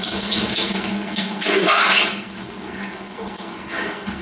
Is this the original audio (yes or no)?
no